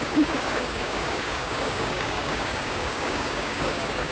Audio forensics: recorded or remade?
remade